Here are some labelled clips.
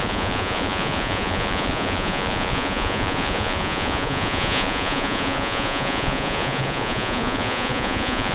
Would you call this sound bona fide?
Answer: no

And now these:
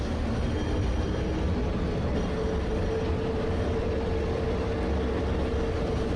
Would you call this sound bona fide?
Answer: yes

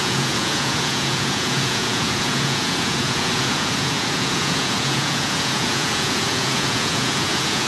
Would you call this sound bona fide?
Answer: no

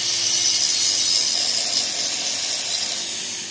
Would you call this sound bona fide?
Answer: yes